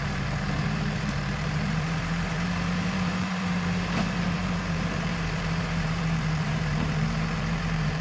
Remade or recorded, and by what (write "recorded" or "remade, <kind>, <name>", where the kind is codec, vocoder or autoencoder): remade, vocoder, BigVGAN v2